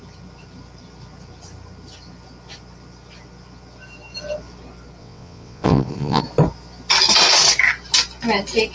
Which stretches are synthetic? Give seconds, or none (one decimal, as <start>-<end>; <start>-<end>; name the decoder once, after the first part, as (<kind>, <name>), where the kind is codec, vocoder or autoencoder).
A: 5.0-6.2 (vocoder, WaveNeXt)

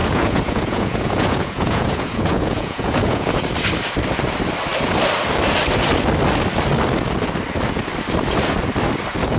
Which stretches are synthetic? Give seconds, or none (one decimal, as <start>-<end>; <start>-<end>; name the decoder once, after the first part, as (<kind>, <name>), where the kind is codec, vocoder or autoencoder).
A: 0.0-3.4 (vocoder, Vocos)

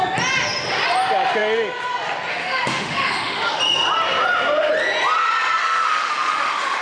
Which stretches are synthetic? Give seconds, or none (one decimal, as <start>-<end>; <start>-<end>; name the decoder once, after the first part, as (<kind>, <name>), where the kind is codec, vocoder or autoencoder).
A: 2.3-3.6 (autoencoder, DAC-VAE); 5.6-6.8

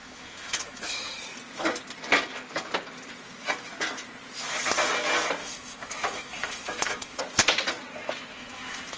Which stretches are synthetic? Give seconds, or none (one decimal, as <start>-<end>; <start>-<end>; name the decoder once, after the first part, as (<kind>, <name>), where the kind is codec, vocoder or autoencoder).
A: 0.0-1.2 (autoencoder, DAC-VAE); 5.4-7.2; 8.3-9.0